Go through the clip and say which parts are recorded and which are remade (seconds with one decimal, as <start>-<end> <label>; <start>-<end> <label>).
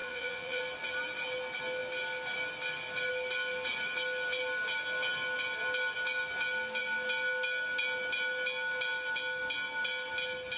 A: 0.0-0.6 remade; 0.6-10.6 recorded